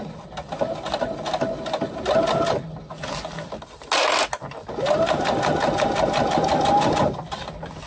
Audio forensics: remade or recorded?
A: recorded